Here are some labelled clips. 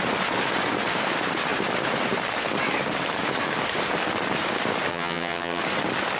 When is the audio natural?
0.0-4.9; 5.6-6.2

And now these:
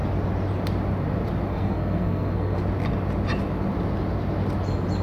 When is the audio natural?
0.0-1.5; 2.6-5.0

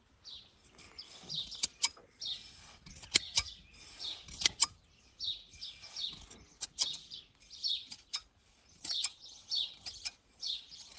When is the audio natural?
0.0-0.6; 2.9-11.0

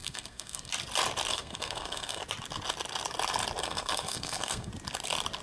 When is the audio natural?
0.7-1.3; 2.2-3.6; 4.7-5.4

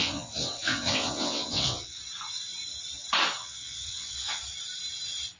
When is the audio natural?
2.0-3.4; 4.4-5.4